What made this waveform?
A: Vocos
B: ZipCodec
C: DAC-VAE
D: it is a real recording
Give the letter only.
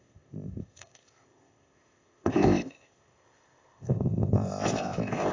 B